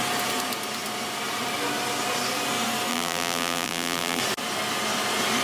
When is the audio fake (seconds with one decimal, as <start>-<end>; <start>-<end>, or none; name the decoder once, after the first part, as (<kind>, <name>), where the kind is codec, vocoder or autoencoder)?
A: 2.9-4.2 (vocoder, BigVGAN v2)